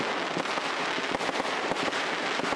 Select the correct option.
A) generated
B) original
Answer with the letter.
B